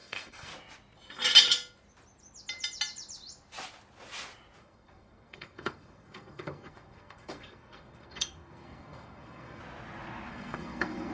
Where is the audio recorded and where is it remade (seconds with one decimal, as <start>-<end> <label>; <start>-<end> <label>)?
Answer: 0.0-0.5 remade; 0.5-4.6 recorded; 4.6-9.6 remade; 9.6-10.3 recorded; 10.3-11.1 remade